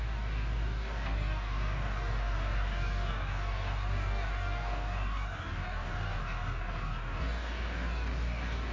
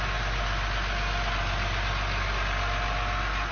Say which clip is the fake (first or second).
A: first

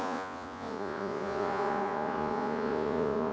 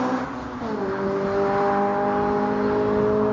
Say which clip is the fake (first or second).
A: first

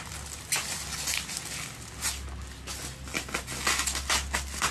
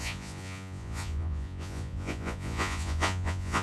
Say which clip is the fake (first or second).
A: second